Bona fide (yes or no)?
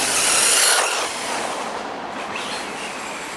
yes